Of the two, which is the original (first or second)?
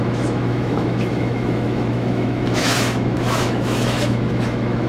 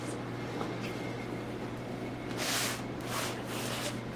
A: second